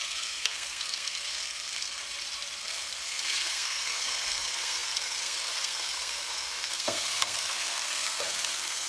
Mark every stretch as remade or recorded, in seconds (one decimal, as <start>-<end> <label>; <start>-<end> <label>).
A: 0.0-2.0 remade; 2.0-2.6 recorded; 2.6-8.9 remade